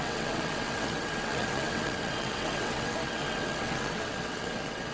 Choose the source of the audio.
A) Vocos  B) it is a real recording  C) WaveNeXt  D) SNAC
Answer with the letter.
C